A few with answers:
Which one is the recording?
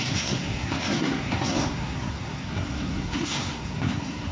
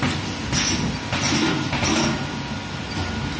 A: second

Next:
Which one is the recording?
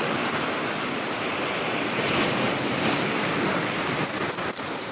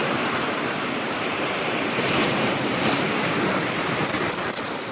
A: first